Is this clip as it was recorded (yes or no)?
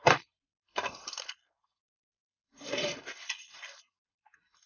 no